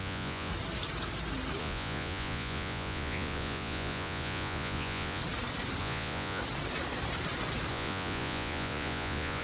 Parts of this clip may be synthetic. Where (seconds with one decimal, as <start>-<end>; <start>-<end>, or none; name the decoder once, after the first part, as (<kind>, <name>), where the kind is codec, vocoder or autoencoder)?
0.0-0.5 (vocoder, Vocos); 1.6-5.2; 5.8-6.4; 7.7-9.4